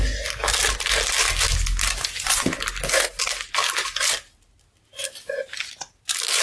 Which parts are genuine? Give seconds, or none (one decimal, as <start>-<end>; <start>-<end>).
0.0-6.4